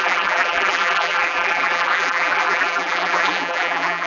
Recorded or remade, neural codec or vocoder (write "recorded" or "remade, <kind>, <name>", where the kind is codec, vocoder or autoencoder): remade, vocoder, BigVGAN v2